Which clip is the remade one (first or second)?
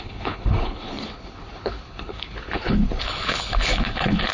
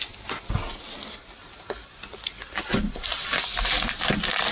first